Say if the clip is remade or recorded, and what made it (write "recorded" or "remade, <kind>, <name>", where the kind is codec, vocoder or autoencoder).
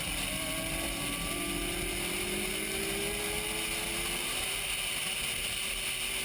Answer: recorded